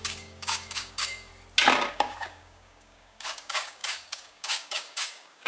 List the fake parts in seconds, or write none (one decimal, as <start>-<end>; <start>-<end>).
0.0-1.3; 1.9-5.5

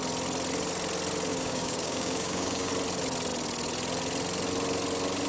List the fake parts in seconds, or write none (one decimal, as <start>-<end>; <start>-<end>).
1.3-2.7